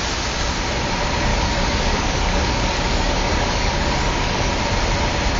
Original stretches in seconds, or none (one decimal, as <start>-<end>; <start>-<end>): 0.0-1.3; 4.5-5.4

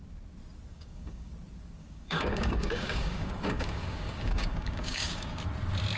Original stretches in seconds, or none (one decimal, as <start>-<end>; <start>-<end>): 0.0-0.7; 1.3-1.8; 5.4-6.0

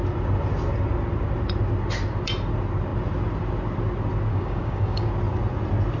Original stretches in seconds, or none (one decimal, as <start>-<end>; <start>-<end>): 0.0-4.3; 5.1-6.0

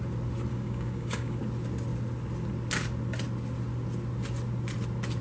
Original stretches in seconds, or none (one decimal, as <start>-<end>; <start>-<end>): 0.0-0.5; 1.4-5.2